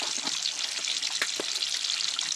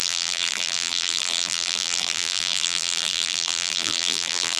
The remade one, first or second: second